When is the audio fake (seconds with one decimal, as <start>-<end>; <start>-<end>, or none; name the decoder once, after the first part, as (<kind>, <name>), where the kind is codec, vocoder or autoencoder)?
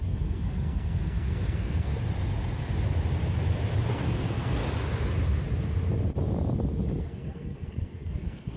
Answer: 0.0-1.9 (codec, SNAC); 3.9-4.6; 7.0-8.6